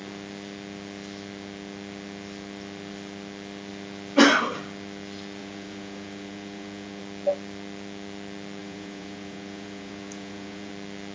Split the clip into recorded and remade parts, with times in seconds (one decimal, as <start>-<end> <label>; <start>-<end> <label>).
0.0-5.4 recorded; 5.4-7.0 remade; 7.0-8.6 recorded; 8.6-10.7 remade; 10.7-11.1 recorded